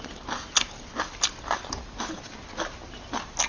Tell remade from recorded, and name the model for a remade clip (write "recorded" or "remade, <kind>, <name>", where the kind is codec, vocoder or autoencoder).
recorded